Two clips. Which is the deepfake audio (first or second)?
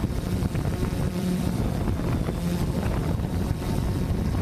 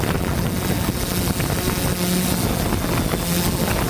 first